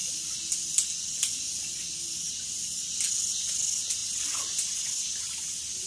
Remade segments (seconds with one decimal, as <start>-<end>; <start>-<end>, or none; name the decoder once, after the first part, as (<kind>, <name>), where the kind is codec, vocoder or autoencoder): none